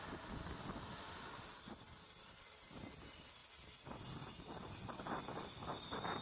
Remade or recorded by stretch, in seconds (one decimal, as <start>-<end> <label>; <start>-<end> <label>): 0.0-6.2 recorded